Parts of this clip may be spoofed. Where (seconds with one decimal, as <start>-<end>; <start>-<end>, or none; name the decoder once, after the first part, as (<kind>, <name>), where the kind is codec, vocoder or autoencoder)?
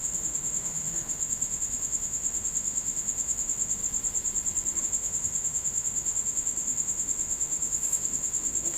0.0-3.8 (autoencoder, DAC-VAE); 4.8-8.8